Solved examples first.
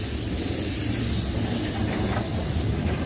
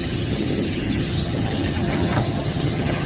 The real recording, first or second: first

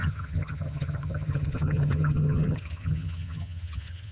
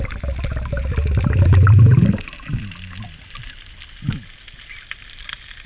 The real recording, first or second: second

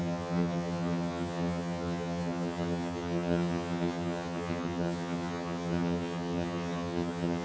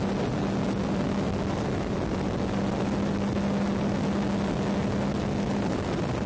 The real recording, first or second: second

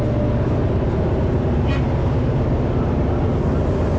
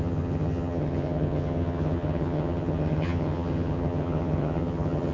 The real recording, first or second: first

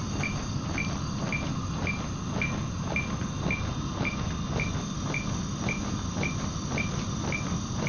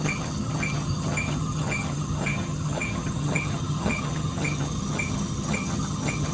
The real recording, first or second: first